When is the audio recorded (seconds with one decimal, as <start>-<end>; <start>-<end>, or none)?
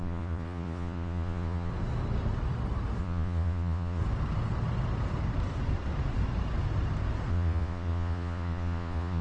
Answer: 1.7-3.0; 4.0-7.3